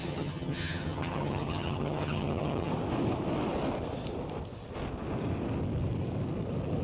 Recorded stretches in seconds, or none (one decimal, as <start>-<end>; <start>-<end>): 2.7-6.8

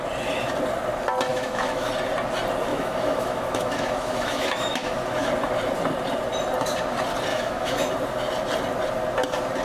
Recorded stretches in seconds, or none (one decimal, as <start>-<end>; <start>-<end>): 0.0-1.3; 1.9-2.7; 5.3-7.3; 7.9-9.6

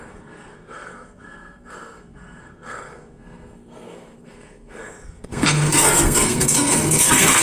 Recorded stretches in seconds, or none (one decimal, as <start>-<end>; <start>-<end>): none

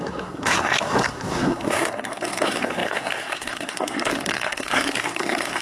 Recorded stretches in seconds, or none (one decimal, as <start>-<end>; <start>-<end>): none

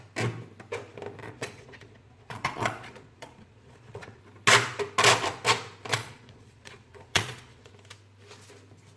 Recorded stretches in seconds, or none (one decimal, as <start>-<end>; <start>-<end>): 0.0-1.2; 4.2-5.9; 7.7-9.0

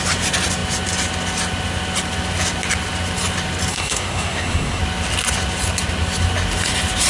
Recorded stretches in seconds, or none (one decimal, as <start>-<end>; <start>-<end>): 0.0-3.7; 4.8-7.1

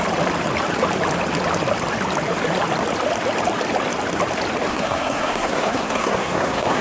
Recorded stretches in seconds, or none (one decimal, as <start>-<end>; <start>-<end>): 0.0-4.7